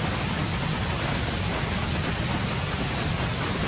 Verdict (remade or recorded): recorded